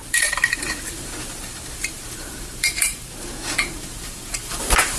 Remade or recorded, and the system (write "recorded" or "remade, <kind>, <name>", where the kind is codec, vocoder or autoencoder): remade, vocoder, BigVGAN v2